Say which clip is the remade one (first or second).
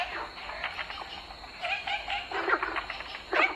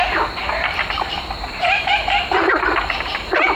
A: second